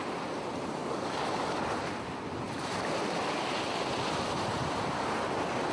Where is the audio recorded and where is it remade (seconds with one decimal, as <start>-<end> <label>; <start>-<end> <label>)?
0.0-0.8 recorded; 0.8-1.7 remade; 1.7-5.7 recorded